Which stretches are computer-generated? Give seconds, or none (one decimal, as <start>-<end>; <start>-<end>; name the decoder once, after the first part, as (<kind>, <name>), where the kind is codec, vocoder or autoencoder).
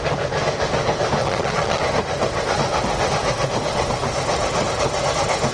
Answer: 1.2-1.8 (vocoder, Vocos)